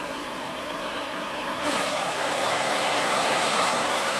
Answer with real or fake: fake